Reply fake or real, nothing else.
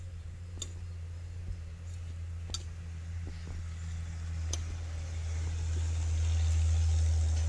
real